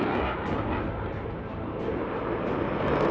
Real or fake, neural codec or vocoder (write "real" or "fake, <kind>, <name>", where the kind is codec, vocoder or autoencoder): real